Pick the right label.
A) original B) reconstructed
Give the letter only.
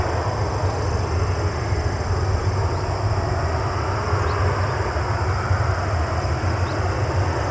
A